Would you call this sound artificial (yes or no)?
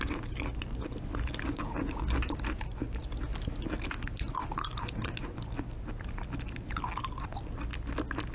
no